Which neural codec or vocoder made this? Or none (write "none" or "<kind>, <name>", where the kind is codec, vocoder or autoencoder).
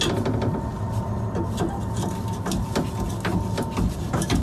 none